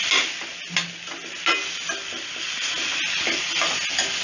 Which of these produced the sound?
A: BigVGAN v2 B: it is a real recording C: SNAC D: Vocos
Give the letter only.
B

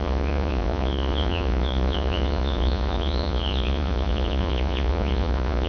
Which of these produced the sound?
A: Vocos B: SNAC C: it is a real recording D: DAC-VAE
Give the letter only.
A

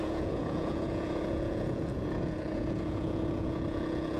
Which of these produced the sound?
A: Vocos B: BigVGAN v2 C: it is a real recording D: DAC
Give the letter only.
A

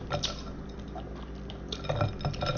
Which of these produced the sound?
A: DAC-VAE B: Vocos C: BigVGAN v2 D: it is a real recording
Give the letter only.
D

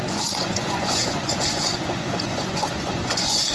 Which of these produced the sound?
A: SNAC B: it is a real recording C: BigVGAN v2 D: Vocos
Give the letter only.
D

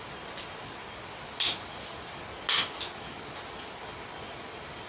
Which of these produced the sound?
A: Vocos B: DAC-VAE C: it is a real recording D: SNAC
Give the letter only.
C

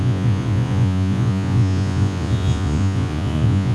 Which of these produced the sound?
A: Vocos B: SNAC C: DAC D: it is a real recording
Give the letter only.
A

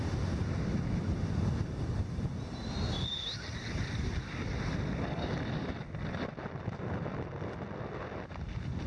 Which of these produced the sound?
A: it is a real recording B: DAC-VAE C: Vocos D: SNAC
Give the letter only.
A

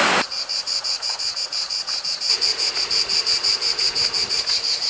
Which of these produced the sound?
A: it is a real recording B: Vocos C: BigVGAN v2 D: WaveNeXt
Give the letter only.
B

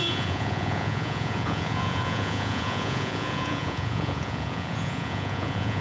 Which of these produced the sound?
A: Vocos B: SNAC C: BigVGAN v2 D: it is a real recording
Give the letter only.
A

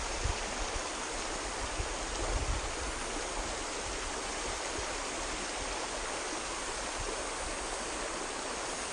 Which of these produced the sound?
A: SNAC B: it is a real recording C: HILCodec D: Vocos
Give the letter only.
B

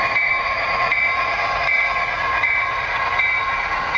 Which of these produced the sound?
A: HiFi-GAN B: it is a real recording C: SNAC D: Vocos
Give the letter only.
D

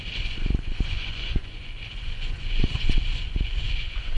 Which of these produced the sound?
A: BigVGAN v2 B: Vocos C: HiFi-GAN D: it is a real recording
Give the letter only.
B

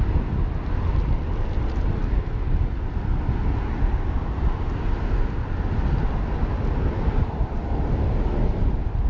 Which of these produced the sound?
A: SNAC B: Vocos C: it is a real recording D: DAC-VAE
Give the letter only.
C